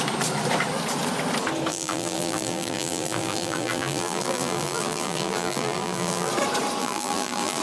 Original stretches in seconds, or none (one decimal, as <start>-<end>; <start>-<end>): 0.0-1.7; 6.3-6.8